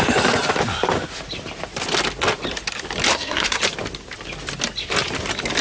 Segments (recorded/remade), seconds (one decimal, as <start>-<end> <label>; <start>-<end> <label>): 0.0-3.1 recorded; 3.1-3.6 remade; 3.6-5.6 recorded

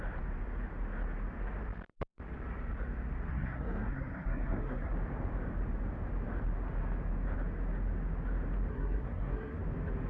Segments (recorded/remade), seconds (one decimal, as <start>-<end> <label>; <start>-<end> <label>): 0.0-3.3 recorded; 3.3-4.9 remade; 4.9-8.7 recorded; 8.7-9.6 remade; 9.6-10.1 recorded

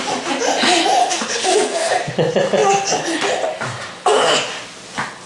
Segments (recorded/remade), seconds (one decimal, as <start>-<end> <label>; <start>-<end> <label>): 0.0-1.0 recorded; 1.0-2.1 remade; 2.1-5.3 recorded

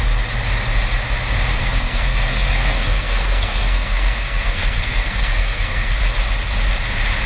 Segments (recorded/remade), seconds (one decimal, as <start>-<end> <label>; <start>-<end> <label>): 0.0-1.6 recorded; 1.6-6.0 remade; 6.0-7.3 recorded

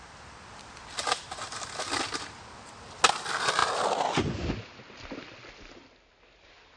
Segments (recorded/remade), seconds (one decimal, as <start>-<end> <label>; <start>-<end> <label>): 0.0-6.8 recorded

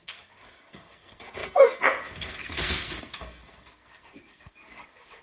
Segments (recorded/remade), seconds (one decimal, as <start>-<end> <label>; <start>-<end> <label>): 0.0-5.2 remade